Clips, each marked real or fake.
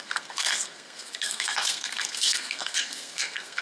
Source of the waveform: fake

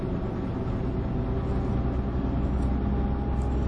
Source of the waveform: real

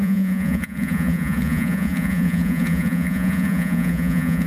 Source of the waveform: fake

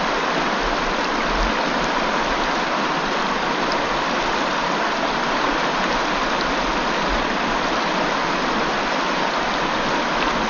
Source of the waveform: real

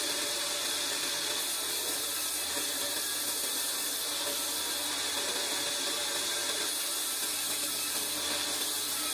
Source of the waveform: real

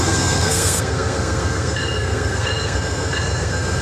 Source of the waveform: fake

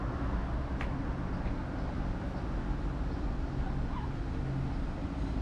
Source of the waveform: real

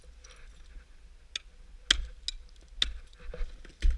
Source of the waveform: real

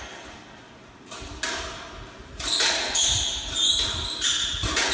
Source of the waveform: real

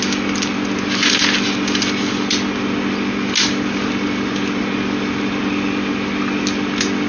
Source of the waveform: real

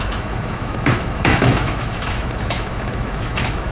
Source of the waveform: fake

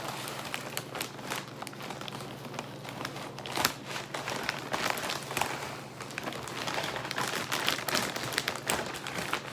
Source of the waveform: real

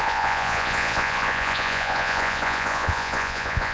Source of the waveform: fake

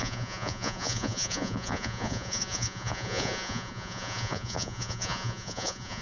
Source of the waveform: fake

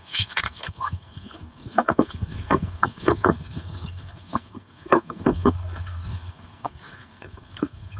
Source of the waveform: fake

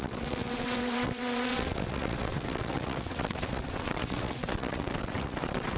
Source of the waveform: fake